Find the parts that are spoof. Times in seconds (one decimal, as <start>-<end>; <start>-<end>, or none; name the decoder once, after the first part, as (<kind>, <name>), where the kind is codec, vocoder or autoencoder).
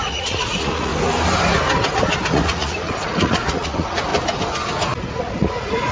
0.0-0.9 (vocoder, Vocos); 2.3-4.1; 5.2-5.9